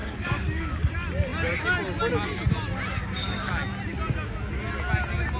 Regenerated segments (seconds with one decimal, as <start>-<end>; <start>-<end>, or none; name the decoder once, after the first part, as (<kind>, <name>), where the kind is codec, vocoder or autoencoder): 0.0-0.9 (codec, DAC); 2.9-3.5